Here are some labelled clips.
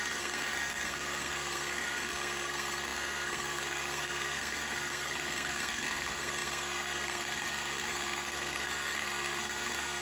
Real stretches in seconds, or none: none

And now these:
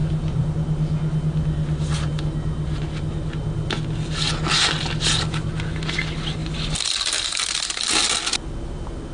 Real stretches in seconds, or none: 0.0-9.1

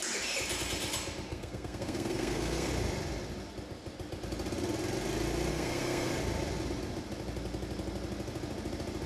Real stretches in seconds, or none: 0.0-1.3; 2.7-5.5; 6.1-9.1